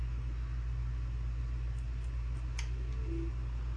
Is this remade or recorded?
recorded